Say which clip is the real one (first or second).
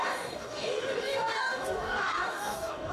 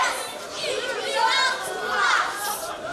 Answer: second